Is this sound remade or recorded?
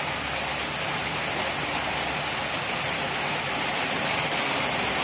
recorded